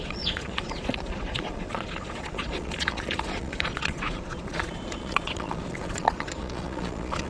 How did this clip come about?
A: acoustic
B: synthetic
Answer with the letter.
B